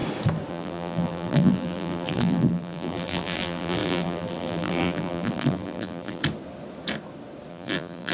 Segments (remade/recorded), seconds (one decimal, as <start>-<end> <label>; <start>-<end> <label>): 0.0-0.5 recorded; 0.5-6.2 remade; 6.2-7.5 recorded; 7.5-8.1 remade